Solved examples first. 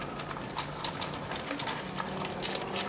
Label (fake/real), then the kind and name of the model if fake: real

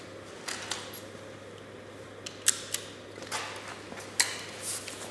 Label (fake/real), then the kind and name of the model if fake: real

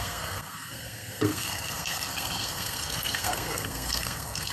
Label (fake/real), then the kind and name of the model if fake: fake, codec, SNAC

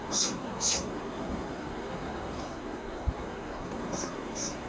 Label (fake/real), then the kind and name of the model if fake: fake, codec, SNAC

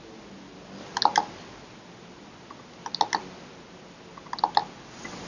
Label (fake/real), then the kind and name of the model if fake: real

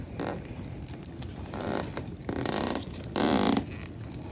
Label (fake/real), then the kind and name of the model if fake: real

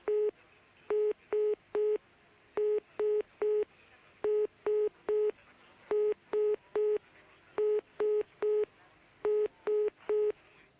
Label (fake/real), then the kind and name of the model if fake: real